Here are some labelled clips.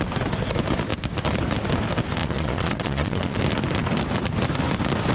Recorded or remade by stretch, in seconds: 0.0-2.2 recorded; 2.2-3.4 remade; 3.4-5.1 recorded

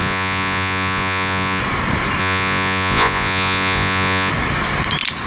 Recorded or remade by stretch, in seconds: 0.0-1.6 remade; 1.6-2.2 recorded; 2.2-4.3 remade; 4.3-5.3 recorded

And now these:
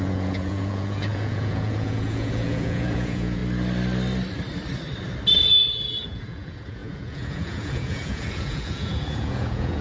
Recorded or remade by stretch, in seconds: 0.0-3.4 remade; 3.4-5.5 recorded; 5.5-9.8 remade

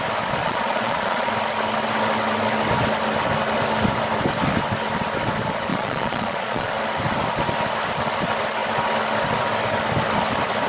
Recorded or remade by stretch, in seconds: 0.0-0.4 recorded; 0.4-1.3 remade; 1.3-5.7 recorded; 5.7-6.7 remade; 6.7-10.7 recorded

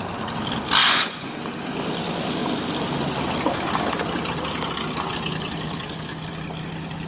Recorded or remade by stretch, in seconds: 0.0-0.8 recorded; 0.8-1.3 remade; 1.3-7.1 recorded

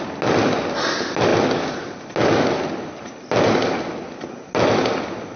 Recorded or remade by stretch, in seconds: 0.0-5.4 recorded

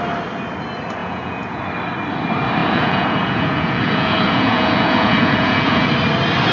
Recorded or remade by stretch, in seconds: 0.0-1.0 recorded; 1.0-1.6 remade; 1.6-2.6 recorded; 2.6-5.9 remade; 5.9-6.5 recorded